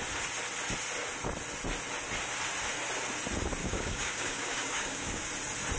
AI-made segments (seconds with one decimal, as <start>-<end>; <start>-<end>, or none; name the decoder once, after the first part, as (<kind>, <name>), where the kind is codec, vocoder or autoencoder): 3.6-5.3 (codec, DAC)